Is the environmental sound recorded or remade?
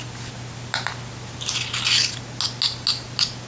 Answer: recorded